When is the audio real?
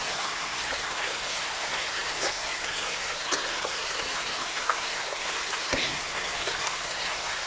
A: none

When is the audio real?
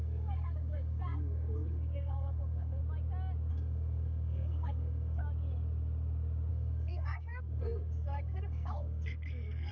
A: 2.8-3.5; 5.2-6.5